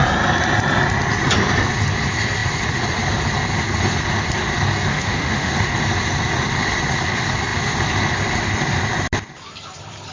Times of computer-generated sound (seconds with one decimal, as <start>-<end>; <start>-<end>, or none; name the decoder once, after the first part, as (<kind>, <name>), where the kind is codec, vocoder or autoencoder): 4.9-5.5 (autoencoder, DAC-VAE)